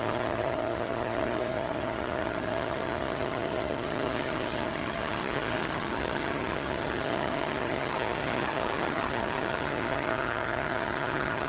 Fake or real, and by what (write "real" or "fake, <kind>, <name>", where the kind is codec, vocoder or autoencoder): fake, vocoder, HiFi-GAN